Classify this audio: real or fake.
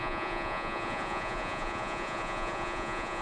fake